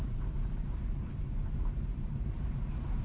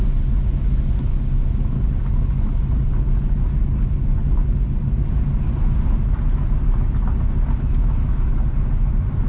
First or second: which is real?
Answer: second